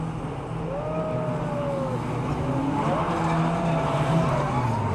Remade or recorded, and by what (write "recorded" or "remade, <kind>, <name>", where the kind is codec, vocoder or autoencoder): recorded